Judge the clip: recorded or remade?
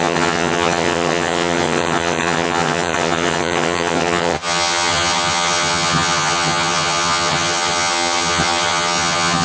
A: remade